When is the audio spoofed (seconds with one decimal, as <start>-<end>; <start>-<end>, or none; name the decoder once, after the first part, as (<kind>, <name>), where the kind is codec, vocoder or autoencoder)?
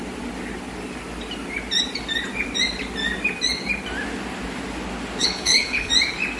5.2-5.9 (codec, HILCodec)